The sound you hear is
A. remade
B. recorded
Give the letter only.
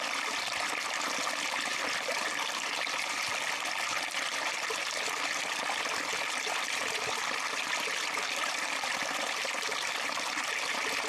B